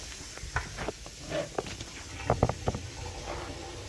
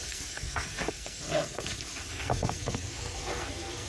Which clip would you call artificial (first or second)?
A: second